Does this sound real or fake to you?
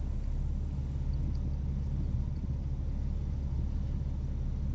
real